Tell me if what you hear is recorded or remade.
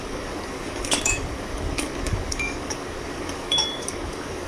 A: remade